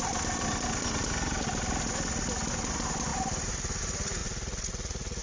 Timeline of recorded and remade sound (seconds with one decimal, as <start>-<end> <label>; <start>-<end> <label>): 0.0-4.2 recorded; 4.2-5.2 remade